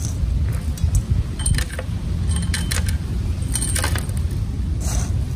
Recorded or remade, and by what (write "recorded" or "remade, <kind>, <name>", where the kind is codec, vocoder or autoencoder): recorded